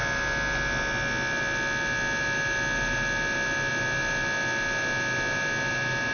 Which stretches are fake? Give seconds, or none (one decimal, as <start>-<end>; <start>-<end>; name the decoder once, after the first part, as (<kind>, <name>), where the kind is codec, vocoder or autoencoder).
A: none